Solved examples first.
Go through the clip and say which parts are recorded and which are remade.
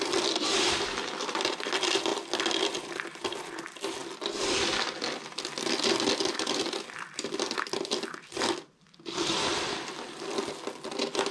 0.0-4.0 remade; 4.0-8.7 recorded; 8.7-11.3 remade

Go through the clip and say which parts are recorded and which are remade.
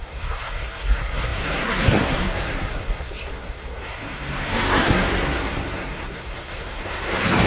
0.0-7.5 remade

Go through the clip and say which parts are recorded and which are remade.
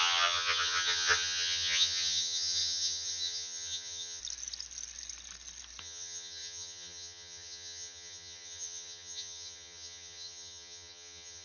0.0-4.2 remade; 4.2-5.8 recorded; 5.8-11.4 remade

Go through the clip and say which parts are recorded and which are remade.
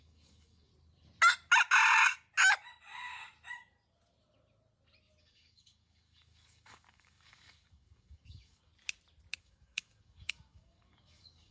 0.0-0.7 remade; 0.7-5.2 recorded; 5.2-8.7 remade; 8.7-9.4 recorded; 9.4-11.5 remade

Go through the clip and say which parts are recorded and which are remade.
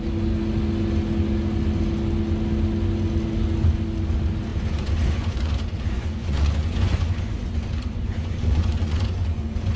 0.0-4.5 recorded; 4.5-9.8 remade